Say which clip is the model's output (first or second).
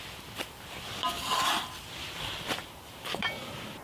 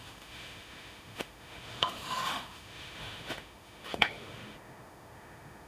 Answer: second